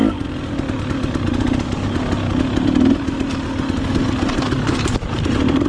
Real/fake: real